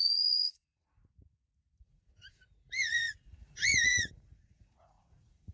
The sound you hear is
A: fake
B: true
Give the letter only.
A